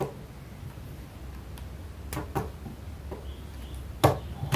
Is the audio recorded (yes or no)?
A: yes